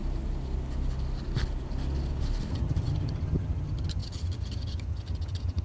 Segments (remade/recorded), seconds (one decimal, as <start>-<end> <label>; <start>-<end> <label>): 0.0-2.5 recorded; 2.5-5.6 remade